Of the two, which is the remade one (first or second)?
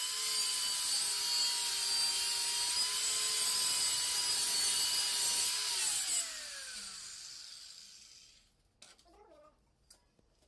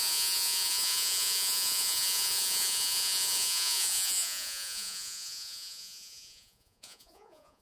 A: second